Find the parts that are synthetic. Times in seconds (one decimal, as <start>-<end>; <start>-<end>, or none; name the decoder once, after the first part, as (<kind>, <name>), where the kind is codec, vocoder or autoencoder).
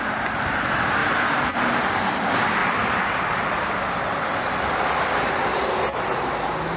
2.6-4.5 (vocoder, BigVGAN v2)